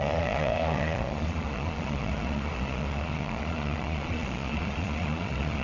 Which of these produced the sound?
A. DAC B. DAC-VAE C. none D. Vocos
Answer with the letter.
D